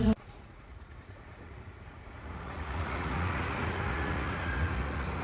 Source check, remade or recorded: remade